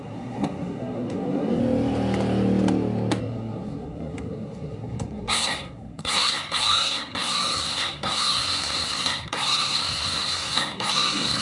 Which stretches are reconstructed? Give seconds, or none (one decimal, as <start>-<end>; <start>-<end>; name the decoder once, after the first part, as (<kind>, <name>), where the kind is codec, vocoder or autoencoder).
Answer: 0.0-1.6 (codec, SNAC); 3.2-11.4

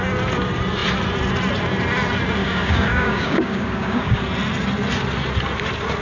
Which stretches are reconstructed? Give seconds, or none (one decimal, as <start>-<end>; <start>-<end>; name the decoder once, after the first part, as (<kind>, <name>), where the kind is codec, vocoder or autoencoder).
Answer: 2.4-4.2 (codec, DAC)

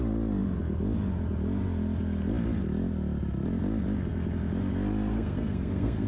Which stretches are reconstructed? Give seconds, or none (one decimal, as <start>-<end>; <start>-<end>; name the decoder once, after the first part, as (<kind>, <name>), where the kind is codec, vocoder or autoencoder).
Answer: 5.1-6.1 (codec, SNAC)

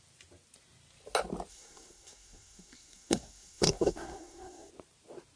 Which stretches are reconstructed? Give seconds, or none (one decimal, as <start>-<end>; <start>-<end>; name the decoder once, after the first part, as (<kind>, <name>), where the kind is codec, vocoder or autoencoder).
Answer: 1.5-4.7 (codec, SNAC)